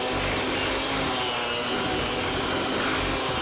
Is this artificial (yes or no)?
no